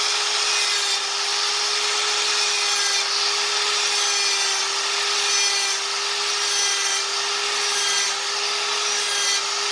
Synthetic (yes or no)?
no